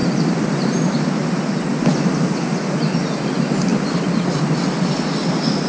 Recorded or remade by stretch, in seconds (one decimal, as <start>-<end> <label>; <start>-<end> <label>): 0.0-5.7 recorded